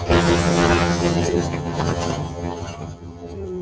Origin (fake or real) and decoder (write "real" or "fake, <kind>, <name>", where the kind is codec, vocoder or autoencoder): fake, vocoder, HiFi-GAN